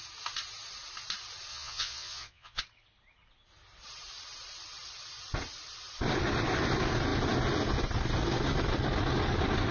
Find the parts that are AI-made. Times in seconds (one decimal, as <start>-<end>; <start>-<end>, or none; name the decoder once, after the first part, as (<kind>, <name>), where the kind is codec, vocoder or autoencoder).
1.5-2.6 (vocoder, Vocos)